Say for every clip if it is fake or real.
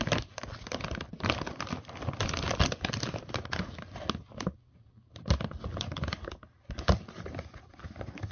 real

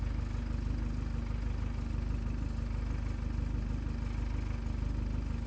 real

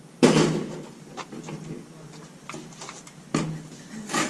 real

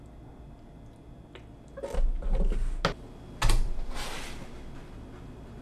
real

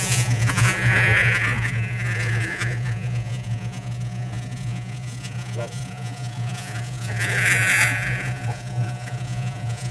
fake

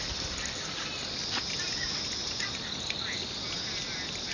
real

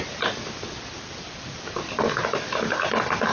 real